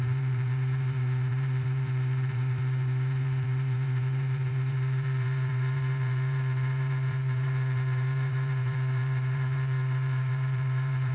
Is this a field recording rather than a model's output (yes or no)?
no